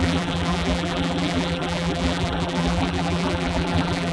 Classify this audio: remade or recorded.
remade